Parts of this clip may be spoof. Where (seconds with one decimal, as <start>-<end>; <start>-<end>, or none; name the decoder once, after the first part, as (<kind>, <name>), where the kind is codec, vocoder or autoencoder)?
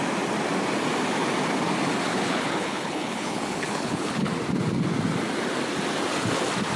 2.1-4.3 (codec, HILCodec)